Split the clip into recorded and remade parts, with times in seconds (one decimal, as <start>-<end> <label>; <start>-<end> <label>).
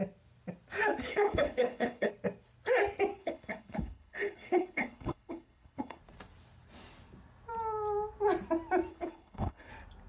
0.0-1.1 recorded; 1.1-2.1 remade; 2.1-3.2 recorded; 3.2-6.0 remade; 6.0-8.9 recorded; 8.9-9.7 remade; 9.7-10.1 recorded